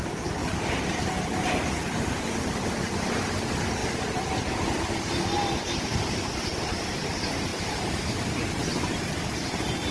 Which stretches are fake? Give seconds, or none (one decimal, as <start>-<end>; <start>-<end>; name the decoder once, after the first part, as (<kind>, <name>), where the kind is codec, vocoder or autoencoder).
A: 0.4-1.7 (vocoder, BigVGAN v2); 3.8-4.3